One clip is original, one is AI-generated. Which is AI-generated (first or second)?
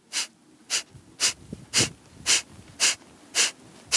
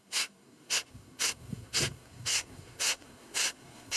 second